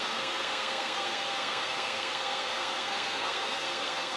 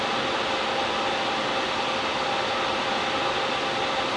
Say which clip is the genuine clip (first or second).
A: second